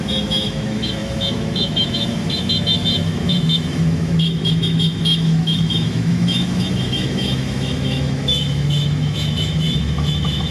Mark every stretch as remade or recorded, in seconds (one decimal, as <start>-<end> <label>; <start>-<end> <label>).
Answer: 0.0-10.5 remade